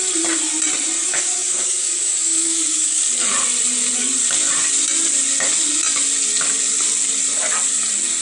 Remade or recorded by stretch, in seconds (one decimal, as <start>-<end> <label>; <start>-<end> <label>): 0.0-1.0 recorded; 1.0-3.0 remade; 3.0-8.2 recorded